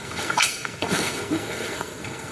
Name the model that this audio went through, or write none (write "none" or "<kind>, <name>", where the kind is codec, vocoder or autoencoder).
codec, SNAC